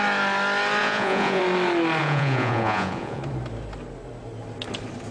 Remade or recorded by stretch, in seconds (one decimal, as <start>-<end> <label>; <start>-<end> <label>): 0.0-0.8 recorded; 0.8-1.4 remade; 1.4-2.0 recorded; 2.0-3.2 remade; 3.2-5.1 recorded